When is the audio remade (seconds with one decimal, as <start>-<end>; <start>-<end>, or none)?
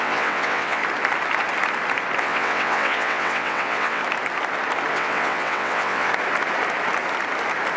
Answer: 0.0-0.8; 2.2-4.0; 4.9-6.1